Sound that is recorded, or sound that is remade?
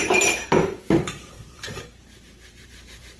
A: remade